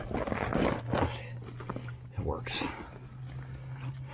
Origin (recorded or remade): recorded